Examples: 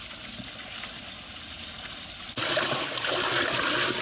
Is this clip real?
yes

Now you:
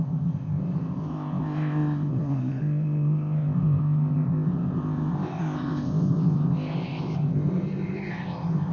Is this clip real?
no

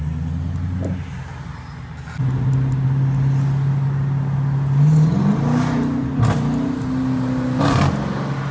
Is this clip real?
yes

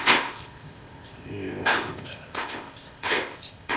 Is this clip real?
no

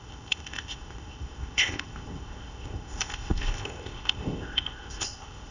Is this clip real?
no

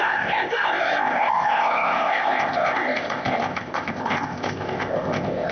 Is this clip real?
no